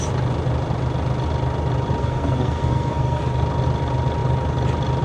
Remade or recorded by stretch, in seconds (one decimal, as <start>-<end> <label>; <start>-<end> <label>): 0.0-2.0 recorded; 2.0-3.2 remade; 3.2-5.0 recorded